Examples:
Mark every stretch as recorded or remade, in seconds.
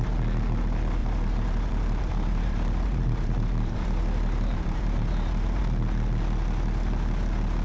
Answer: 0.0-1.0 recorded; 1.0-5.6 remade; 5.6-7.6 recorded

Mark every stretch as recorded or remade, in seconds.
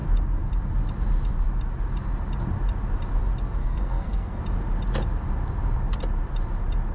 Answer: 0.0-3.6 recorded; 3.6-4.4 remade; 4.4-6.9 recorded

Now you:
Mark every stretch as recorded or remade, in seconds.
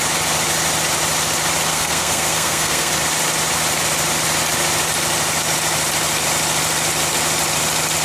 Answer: 0.0-1.7 recorded; 1.7-2.9 remade; 2.9-8.0 recorded